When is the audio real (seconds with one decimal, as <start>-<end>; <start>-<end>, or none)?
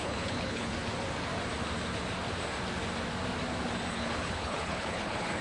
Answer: 0.7-3.9